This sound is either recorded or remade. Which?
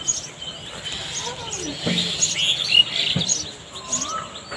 recorded